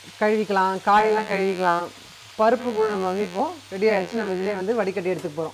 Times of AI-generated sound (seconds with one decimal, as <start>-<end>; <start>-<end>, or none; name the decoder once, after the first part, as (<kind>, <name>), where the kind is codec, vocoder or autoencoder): 1.0-1.8 (vocoder, BigVGAN v2); 2.6-3.4; 3.9-4.6